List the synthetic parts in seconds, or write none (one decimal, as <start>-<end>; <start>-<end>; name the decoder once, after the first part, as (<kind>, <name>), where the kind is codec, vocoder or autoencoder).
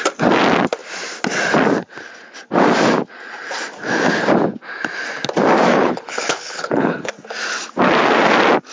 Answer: 5.7-7.1 (codec, HILCodec)